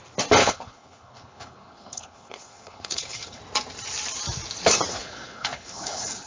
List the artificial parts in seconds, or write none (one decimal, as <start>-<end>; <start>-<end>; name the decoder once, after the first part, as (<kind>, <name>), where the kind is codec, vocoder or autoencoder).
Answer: 0.4-3.4 (codec, HILCodec); 4.9-6.3